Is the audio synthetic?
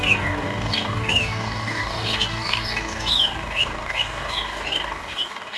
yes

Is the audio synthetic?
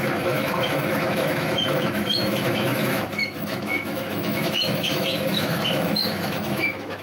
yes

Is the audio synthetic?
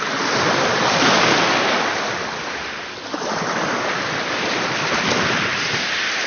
no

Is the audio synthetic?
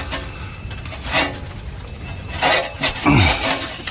no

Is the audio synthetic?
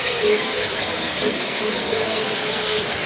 yes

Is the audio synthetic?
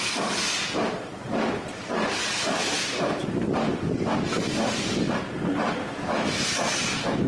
no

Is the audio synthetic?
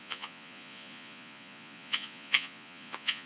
yes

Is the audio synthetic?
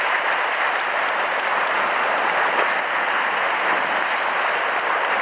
no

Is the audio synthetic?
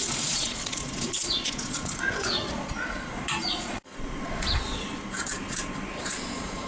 yes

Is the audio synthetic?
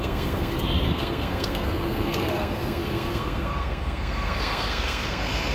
yes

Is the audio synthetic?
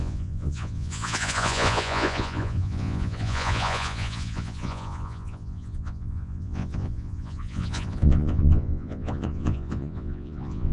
yes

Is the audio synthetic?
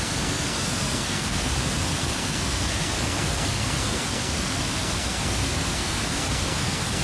yes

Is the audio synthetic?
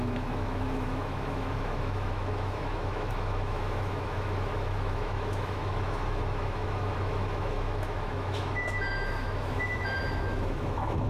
yes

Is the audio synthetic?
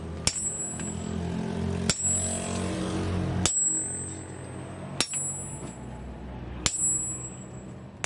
no